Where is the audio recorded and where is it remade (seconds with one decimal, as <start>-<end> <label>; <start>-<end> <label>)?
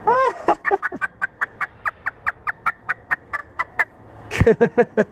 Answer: 0.0-1.7 remade; 1.7-2.5 recorded; 2.5-5.1 remade